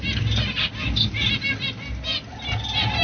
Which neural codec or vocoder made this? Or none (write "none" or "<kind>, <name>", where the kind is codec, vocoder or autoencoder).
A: none